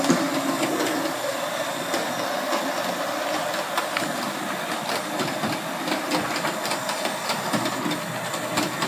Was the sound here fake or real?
real